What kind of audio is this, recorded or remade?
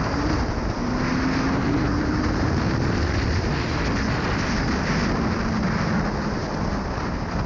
recorded